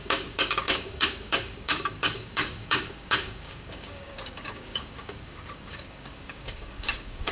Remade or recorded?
remade